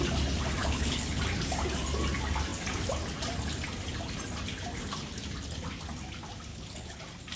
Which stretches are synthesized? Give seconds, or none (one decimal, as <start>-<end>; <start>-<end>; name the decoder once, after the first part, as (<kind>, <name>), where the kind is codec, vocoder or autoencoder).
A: 0.6-1.2 (codec, HILCodec); 6.5-7.0